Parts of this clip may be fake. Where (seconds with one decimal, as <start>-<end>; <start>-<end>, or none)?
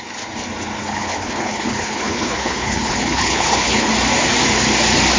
0.8-3.9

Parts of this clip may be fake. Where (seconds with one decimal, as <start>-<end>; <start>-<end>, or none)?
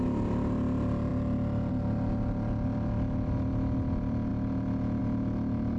none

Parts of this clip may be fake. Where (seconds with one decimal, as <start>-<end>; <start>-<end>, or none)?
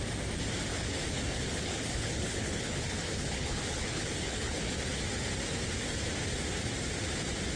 0.7-4.7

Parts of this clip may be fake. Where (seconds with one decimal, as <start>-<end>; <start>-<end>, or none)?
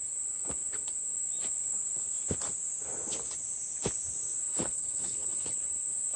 4.5-5.7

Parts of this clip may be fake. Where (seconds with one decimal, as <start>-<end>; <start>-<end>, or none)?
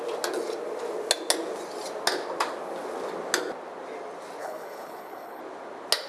4.4-5.4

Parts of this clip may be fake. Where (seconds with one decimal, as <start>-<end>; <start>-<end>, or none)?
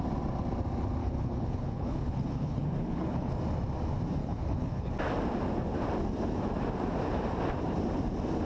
1.0-3.3; 4.2-4.9